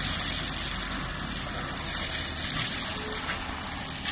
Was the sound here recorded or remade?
recorded